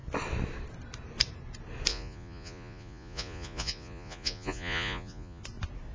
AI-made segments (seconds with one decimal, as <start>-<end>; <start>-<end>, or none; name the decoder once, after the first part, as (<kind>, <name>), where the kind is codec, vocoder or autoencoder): 1.9-5.4 (vocoder, Vocos)